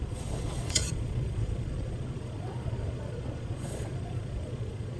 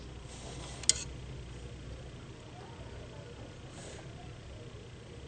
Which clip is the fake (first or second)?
first